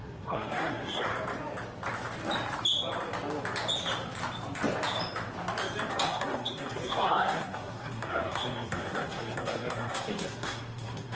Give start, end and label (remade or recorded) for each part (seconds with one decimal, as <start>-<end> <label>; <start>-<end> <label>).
0.0-1.1 remade; 1.1-5.9 recorded; 5.9-11.1 remade